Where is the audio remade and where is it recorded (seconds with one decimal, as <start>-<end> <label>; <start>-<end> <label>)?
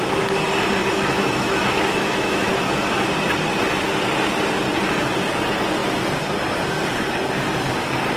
0.0-0.8 recorded; 0.8-2.7 remade; 2.7-8.2 recorded